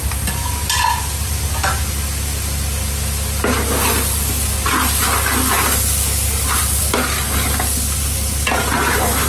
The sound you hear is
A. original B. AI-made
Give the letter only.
A